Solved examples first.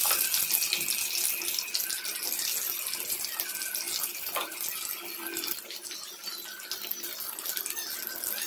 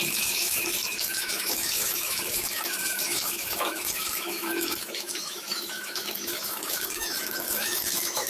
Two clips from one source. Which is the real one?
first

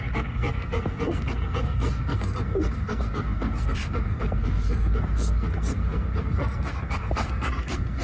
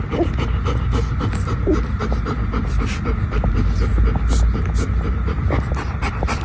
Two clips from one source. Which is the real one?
second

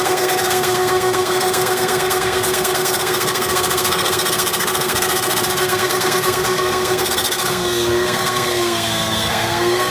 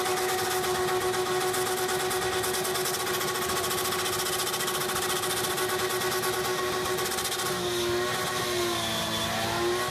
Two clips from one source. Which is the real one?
second